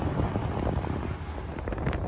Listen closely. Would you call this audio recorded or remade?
recorded